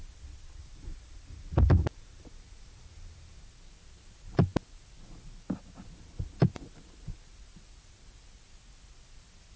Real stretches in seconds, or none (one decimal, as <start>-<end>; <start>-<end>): 0.0-0.6; 3.5-9.6